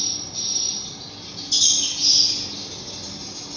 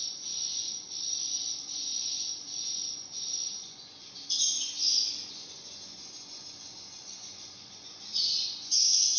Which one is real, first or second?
first